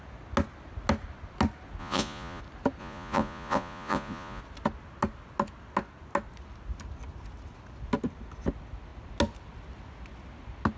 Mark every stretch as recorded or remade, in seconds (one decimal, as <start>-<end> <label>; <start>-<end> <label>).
0.0-1.8 recorded; 1.8-2.4 remade; 2.4-2.8 recorded; 2.8-4.4 remade; 4.4-10.8 recorded